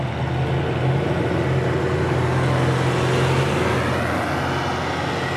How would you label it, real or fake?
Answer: real